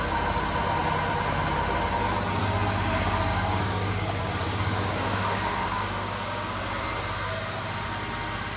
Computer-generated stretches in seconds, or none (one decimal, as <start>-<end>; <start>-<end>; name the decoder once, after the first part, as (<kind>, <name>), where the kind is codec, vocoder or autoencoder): 3.3-6.6 (codec, DAC)